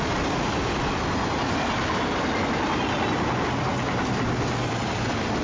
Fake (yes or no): no